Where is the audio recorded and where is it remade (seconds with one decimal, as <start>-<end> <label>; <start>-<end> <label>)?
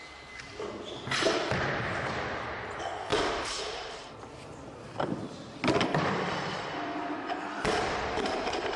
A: 0.0-8.8 recorded